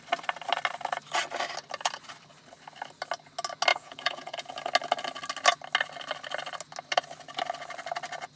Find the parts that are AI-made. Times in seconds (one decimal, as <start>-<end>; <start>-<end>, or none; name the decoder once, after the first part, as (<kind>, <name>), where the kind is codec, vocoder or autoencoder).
3.7-4.5 (vocoder, Vocos)